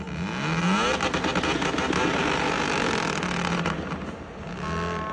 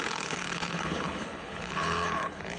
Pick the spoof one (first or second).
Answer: second